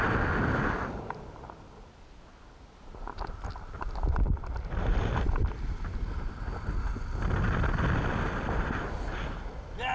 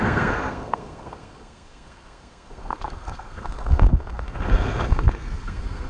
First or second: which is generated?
second